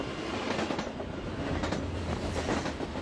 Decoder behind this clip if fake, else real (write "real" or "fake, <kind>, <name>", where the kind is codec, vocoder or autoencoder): real